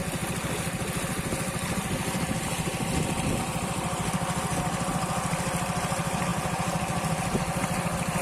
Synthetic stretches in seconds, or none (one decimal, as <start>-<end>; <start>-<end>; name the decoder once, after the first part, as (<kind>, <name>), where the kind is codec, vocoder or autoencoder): none